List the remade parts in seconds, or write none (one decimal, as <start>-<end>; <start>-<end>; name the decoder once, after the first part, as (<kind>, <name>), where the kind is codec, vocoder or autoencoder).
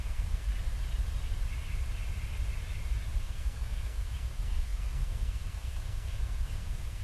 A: 0.0-0.5 (codec, SNAC); 3.2-7.0